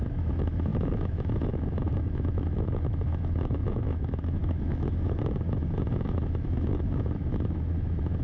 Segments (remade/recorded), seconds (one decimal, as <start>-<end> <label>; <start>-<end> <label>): 0.0-8.2 remade